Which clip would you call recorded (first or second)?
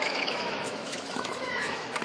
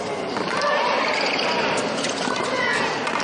second